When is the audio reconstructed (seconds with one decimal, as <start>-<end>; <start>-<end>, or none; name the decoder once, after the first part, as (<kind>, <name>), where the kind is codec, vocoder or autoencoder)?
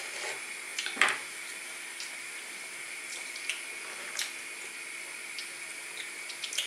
0.7-3.3 (vocoder, BigVGAN v2); 5.7-6.3